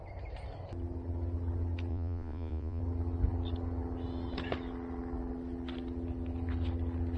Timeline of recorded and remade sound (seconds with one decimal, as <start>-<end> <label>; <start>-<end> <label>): 0.0-1.9 recorded; 1.9-2.8 remade; 2.8-7.2 recorded